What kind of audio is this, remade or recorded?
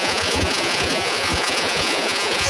remade